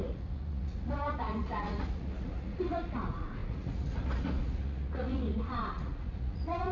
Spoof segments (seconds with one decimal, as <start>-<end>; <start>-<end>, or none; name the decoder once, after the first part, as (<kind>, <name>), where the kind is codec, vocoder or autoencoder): 0.0-6.7 (vocoder, Vocos)

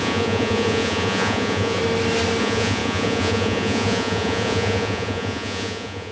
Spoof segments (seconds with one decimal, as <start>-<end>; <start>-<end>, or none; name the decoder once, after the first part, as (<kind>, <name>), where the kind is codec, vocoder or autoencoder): 0.0-1.8 (vocoder, Vocos); 2.4-6.1

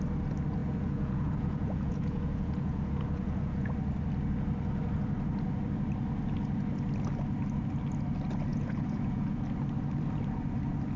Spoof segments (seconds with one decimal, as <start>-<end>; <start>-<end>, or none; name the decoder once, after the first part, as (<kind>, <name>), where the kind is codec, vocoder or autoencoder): 0.6-3.7 (vocoder, Vocos); 8.5-9.4

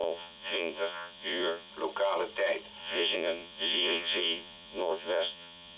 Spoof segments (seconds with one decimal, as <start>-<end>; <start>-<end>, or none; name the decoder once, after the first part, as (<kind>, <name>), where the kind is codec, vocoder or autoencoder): 0.0-1.7 (vocoder, Vocos); 2.8-5.8